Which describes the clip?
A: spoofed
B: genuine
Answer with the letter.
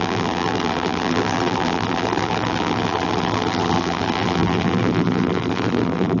A